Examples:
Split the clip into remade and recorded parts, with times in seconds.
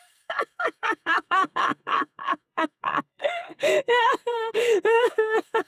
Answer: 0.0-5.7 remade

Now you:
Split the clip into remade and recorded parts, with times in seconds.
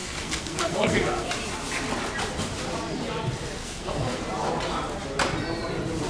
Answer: 0.0-1.3 remade; 1.3-3.6 recorded; 3.6-4.2 remade; 4.2-6.1 recorded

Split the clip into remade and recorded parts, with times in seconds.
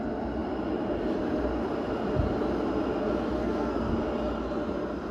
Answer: 0.0-3.4 recorded; 3.4-3.9 remade; 3.9-5.1 recorded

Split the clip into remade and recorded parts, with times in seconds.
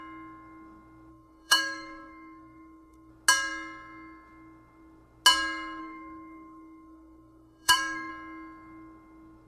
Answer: 0.0-1.1 recorded; 1.1-3.1 remade; 3.1-5.8 recorded; 5.8-8.1 remade; 8.1-9.5 recorded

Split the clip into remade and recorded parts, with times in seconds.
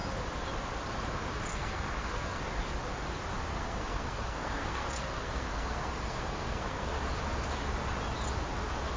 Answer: 0.0-1.5 recorded; 1.5-2.4 remade; 2.4-3.5 recorded; 3.5-7.0 remade; 7.0-9.0 recorded